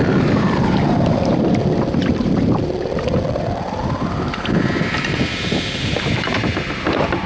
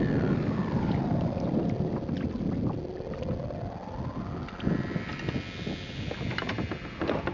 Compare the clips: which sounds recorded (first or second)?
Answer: second